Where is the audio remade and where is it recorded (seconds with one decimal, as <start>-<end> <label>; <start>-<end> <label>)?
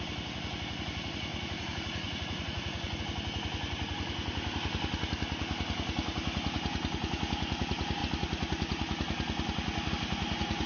0.0-1.3 recorded; 1.3-3.0 remade; 3.0-10.7 recorded